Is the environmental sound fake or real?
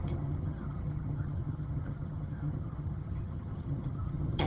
fake